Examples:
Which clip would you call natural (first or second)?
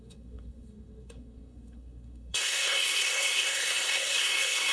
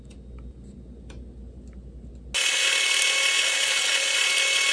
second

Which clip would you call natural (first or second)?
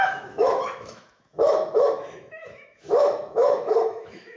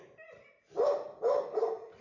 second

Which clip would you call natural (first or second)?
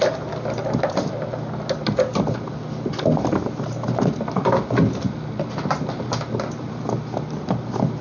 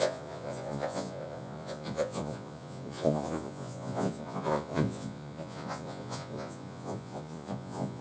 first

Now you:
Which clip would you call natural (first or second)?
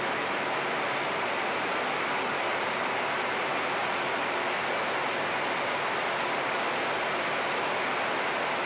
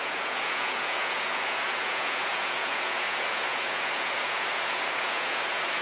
first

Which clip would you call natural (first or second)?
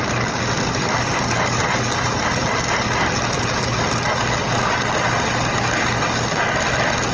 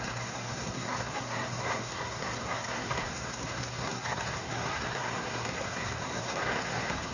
first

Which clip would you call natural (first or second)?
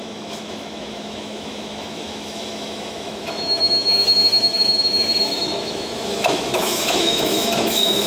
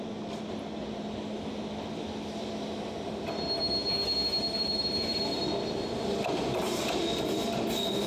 second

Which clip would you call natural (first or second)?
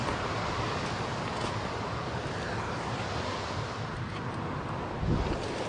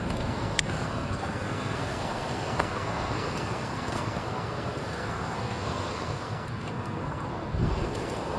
first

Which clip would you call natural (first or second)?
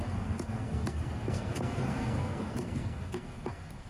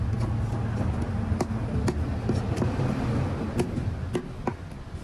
second